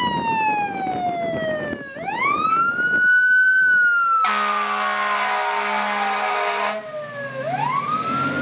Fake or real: real